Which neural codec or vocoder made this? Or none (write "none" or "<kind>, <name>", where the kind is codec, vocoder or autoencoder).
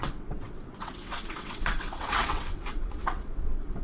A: vocoder, WaveNeXt